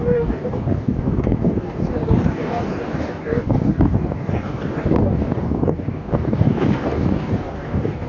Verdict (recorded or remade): remade